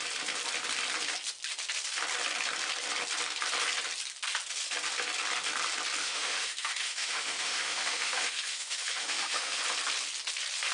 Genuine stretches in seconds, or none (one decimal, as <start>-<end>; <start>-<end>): 0.0-6.0; 9.6-10.7